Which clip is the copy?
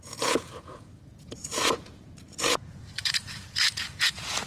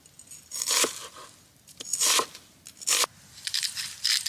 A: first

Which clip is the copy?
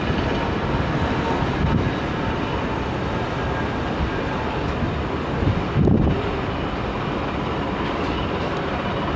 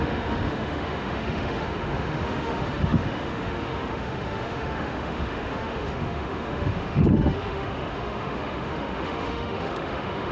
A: second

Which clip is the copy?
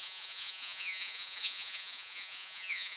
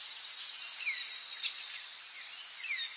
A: first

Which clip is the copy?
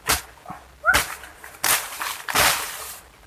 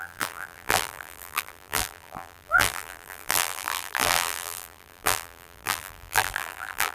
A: second